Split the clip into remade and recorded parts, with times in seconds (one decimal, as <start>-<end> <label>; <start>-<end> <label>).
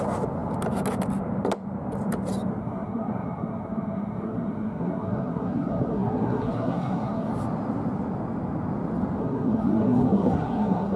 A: 0.0-2.6 recorded; 2.6-7.3 remade; 7.3-9.2 recorded; 9.2-11.0 remade